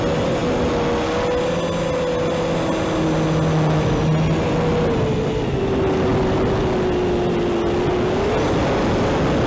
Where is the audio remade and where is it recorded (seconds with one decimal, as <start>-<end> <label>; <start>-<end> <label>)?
0.0-9.5 recorded